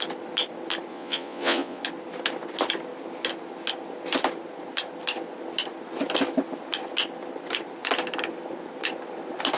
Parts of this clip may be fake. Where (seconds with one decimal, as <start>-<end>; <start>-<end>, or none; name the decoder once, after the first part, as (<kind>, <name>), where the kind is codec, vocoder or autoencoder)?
0.9-1.8 (vocoder, Vocos)